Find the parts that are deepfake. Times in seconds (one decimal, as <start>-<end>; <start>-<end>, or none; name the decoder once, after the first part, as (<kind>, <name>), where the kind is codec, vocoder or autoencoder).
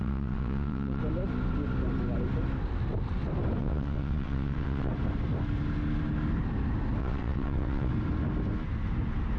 0.0-1.0 (vocoder, WaveNeXt); 3.6-4.9; 7.0-7.9